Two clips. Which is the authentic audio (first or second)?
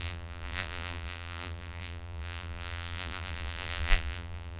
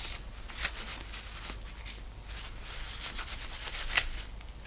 second